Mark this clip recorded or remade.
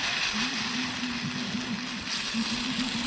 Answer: recorded